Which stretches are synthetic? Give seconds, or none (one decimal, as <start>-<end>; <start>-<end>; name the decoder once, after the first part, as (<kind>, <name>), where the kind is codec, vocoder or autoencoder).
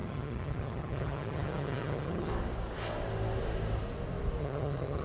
0.0-2.3 (vocoder, HiFi-GAN); 4.4-5.0